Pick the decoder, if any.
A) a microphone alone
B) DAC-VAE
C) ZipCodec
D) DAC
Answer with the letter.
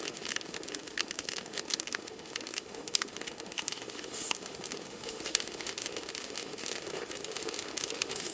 B